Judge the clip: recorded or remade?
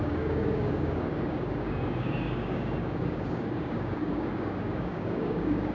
remade